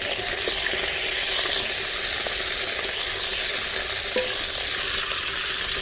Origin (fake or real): real